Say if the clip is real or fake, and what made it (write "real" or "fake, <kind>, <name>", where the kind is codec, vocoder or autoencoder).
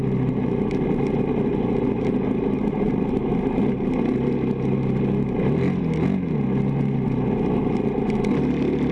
real